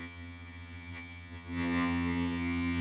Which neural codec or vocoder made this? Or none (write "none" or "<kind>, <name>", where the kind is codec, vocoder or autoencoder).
vocoder, HiFi-GAN